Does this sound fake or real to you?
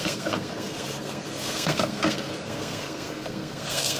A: fake